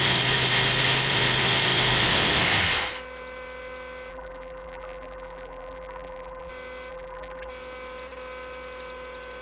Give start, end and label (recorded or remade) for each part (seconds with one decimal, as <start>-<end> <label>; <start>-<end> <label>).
0.0-4.1 recorded; 4.1-6.5 remade; 6.5-6.9 recorded; 6.9-7.5 remade; 7.5-9.4 recorded